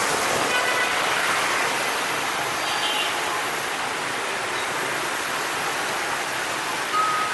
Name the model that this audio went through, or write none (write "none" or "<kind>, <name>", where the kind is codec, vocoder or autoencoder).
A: none